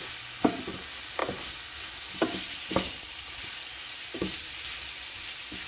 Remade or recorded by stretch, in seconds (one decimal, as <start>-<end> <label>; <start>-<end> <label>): 0.0-5.7 recorded

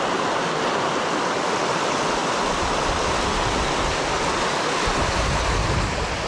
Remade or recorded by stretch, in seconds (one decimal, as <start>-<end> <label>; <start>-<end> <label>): 0.0-6.3 recorded

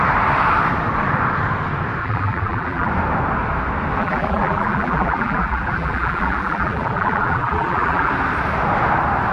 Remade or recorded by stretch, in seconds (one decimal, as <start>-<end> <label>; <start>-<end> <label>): 0.0-2.0 recorded; 2.0-2.9 remade; 2.9-4.0 recorded; 4.0-8.1 remade; 8.1-9.3 recorded

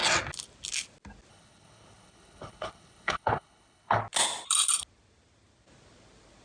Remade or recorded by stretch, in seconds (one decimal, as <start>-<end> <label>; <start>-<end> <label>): 0.0-1.3 recorded; 1.3-4.0 remade; 4.0-6.4 recorded

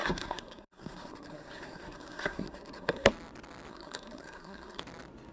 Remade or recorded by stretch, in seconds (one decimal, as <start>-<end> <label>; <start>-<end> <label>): 0.0-3.1 remade; 3.1-3.7 recorded; 3.7-4.8 remade; 4.8-5.3 recorded